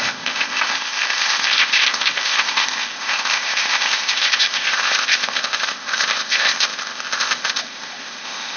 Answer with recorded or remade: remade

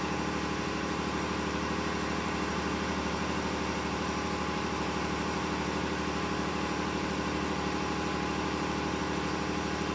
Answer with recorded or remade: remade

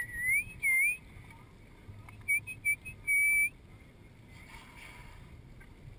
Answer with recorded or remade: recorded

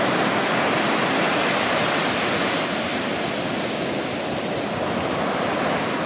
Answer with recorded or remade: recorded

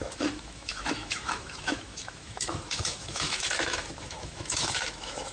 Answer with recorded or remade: remade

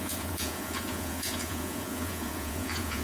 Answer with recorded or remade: remade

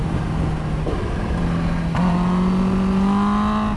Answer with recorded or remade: recorded